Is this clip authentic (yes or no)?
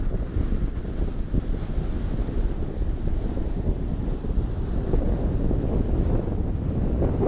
yes